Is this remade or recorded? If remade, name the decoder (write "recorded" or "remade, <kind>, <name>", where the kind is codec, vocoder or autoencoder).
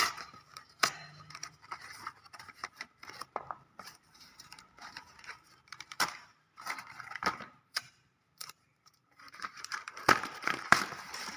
remade, vocoder, BigVGAN v2